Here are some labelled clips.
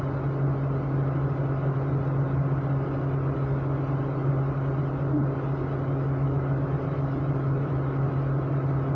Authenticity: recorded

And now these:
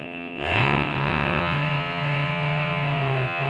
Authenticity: remade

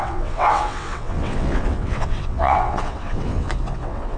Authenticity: remade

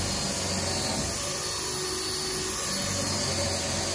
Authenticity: recorded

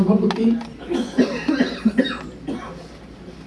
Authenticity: recorded